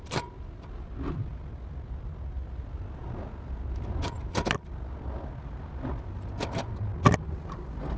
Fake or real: real